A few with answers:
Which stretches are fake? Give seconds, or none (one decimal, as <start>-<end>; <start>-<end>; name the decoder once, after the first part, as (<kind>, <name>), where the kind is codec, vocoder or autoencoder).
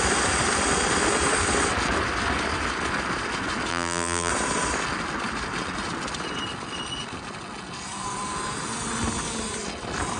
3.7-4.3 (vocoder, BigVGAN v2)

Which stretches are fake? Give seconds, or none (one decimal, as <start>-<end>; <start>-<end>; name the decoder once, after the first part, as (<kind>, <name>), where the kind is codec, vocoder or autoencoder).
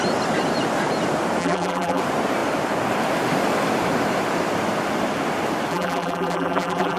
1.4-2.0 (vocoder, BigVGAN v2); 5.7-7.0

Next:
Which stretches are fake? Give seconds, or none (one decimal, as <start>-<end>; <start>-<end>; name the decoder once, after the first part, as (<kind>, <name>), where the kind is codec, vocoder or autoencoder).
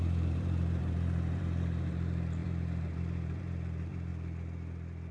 0.0-4.1 (vocoder, BigVGAN v2)